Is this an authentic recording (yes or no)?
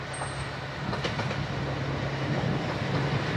yes